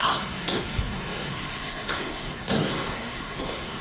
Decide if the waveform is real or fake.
fake